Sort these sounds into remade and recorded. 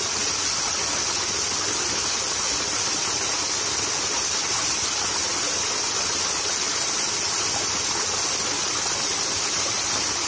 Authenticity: recorded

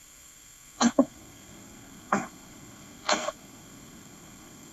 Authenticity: remade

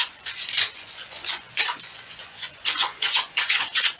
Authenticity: remade